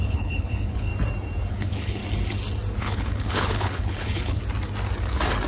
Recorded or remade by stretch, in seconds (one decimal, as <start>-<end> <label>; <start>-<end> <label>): 0.0-0.9 remade; 0.9-1.5 recorded; 1.5-2.0 remade; 2.0-2.8 recorded; 2.8-4.4 remade; 4.4-5.5 recorded